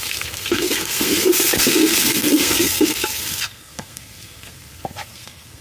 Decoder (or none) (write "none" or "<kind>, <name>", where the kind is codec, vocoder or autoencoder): codec, SNAC